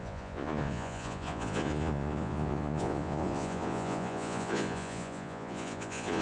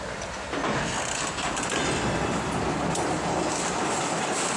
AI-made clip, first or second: first